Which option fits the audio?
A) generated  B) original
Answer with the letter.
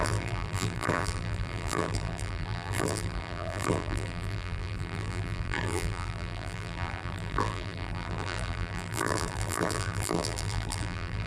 A